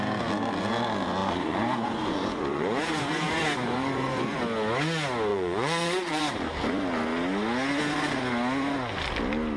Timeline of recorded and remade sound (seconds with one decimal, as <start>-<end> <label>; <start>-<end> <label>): 0.0-1.2 recorded; 1.2-4.4 remade; 4.4-5.3 recorded; 5.3-6.2 remade; 6.2-9.6 recorded